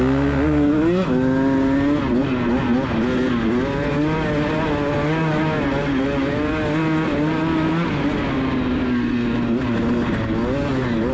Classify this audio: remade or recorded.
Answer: recorded